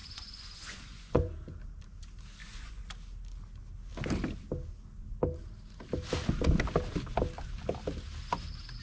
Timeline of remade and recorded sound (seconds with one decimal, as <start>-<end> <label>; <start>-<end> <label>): 0.0-1.3 remade; 1.3-2.4 recorded; 2.4-2.9 remade; 2.9-8.8 recorded